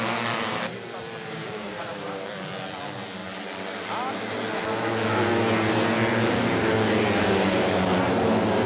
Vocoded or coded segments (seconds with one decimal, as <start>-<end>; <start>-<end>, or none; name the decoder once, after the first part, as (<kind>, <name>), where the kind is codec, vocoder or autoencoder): 1.2-2.3 (codec, DAC)